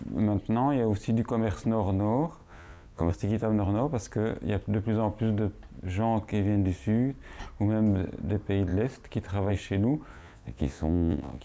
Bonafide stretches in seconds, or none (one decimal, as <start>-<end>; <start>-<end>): 0.0-2.4; 3.1-10.1